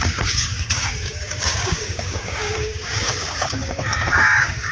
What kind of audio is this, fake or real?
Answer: fake